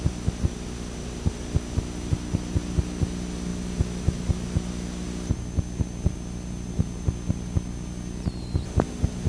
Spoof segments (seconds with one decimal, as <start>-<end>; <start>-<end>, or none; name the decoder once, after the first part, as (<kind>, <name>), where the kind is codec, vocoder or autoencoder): none